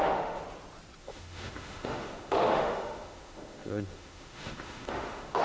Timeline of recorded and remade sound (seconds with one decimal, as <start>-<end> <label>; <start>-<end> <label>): 0.0-0.4 remade; 0.4-1.0 recorded; 1.0-5.4 remade